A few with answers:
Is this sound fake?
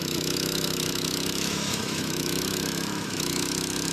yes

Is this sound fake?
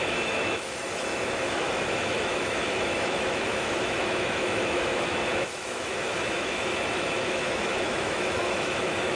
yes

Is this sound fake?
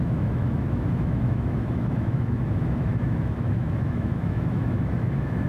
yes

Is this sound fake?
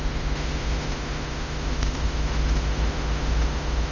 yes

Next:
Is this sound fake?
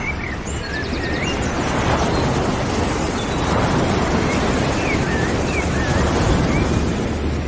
no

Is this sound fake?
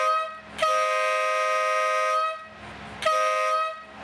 no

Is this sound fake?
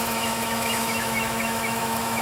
yes